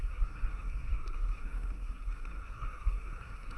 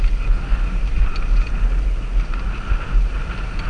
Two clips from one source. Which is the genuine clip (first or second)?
second